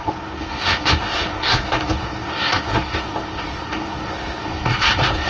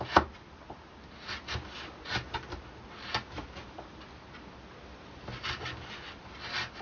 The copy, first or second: first